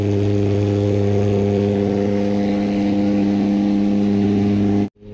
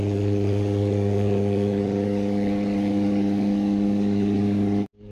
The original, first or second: first